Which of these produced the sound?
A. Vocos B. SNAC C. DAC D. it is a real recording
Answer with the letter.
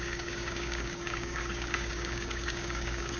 C